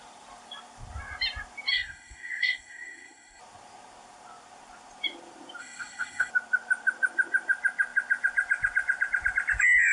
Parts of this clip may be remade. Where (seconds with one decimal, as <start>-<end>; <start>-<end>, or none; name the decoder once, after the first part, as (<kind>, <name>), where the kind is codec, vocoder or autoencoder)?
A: 1.7-3.4 (codec, SNAC); 5.6-6.3